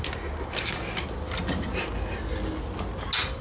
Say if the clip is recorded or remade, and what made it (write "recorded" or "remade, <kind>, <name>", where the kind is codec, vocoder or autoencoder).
recorded